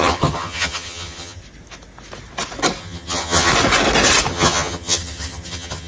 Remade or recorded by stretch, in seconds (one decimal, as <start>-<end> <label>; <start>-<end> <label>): 0.0-1.4 remade; 1.4-2.8 recorded; 2.8-3.5 remade; 3.5-4.3 recorded; 4.3-5.9 remade